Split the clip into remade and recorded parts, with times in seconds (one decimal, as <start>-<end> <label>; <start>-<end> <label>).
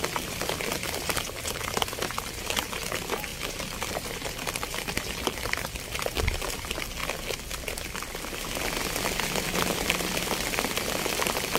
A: 0.0-7.0 remade; 7.0-7.6 recorded; 7.6-11.6 remade